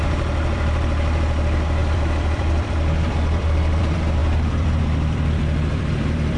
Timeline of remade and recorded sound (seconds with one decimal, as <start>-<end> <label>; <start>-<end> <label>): 0.0-6.4 remade

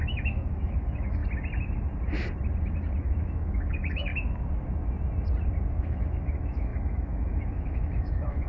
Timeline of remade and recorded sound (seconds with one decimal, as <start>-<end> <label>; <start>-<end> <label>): 0.0-1.2 remade; 1.2-3.0 recorded; 3.0-4.1 remade; 4.1-5.7 recorded; 5.7-8.5 remade

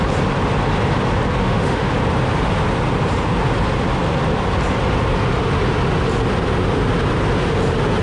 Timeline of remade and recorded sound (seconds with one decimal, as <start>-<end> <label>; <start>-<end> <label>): 0.0-1.4 recorded; 1.4-1.9 remade; 1.9-8.0 recorded

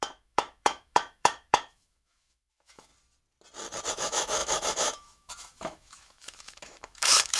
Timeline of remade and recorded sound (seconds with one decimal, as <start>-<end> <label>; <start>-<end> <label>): 0.0-2.9 remade; 2.9-3.9 recorded; 3.9-7.4 remade